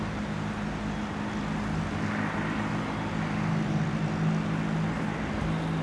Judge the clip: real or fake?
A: real